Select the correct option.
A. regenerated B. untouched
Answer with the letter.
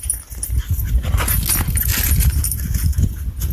B